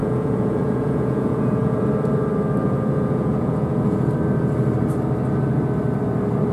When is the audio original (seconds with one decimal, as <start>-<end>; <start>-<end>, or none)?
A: 1.9-2.6; 4.1-6.5